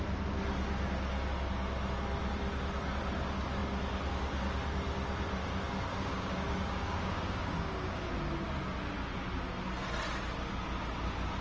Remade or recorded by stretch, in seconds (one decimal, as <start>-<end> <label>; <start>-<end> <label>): 0.0-5.9 recorded; 5.9-8.1 remade; 8.1-11.4 recorded